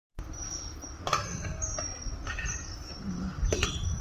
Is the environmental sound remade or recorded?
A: recorded